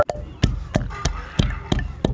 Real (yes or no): yes